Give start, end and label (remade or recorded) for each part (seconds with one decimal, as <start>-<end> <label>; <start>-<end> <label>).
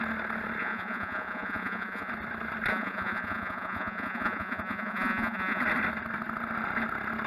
0.0-0.6 recorded; 0.6-2.1 remade; 2.1-2.7 recorded; 2.7-5.6 remade; 5.6-7.3 recorded